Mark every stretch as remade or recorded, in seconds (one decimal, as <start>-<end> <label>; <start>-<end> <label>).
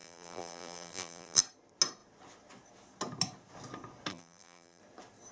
0.0-1.4 remade; 1.4-4.1 recorded; 4.1-4.8 remade; 4.8-5.3 recorded